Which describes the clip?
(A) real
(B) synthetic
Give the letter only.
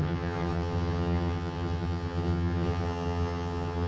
B